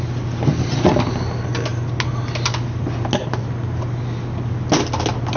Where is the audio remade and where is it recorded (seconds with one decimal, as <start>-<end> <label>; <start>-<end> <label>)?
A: 0.0-5.4 recorded